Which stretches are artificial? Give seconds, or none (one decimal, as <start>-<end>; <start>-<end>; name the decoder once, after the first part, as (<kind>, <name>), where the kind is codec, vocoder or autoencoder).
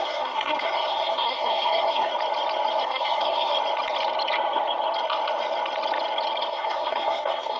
0.0-2.1 (codec, SNAC); 2.8-3.5; 6.5-7.6